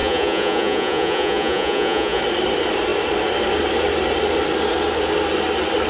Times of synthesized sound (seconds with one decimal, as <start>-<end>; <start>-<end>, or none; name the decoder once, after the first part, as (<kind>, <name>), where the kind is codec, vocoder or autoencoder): 0.0-2.2 (vocoder, Vocos)